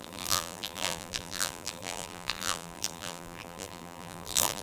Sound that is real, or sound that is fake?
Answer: fake